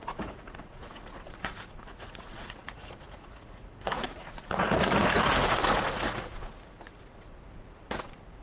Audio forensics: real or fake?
fake